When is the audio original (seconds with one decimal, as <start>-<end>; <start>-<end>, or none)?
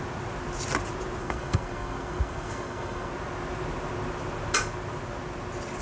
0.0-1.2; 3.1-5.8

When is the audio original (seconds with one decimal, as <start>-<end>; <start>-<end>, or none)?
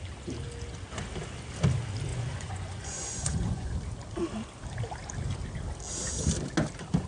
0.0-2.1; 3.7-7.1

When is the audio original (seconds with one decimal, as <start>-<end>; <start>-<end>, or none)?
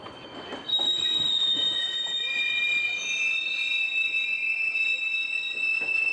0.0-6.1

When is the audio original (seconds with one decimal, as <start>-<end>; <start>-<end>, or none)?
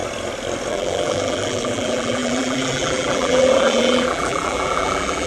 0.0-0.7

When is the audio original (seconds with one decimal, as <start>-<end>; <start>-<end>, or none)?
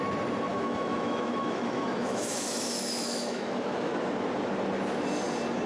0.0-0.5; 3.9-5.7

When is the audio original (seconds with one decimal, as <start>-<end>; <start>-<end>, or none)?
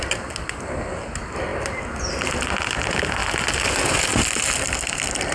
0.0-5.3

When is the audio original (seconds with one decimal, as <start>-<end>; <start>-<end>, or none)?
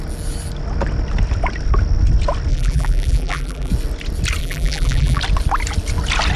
0.0-2.5; 3.7-4.4; 5.2-6.4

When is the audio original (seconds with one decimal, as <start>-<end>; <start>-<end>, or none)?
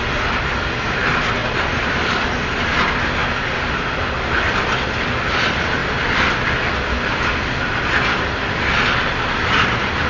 0.0-1.4; 2.1-5.8; 8.6-10.1